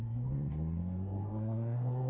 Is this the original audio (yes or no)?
no